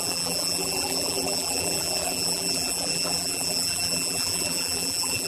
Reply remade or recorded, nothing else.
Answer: remade